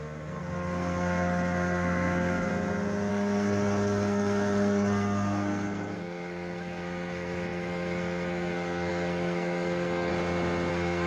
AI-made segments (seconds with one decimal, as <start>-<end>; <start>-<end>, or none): 0.0-2.5; 3.1-10.1; 10.7-11.1